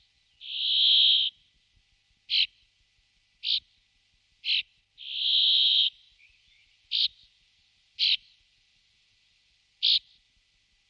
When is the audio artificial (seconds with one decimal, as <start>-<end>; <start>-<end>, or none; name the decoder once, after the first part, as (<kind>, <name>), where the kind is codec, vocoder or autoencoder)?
5.4-9.6 (vocoder, BigVGAN v2)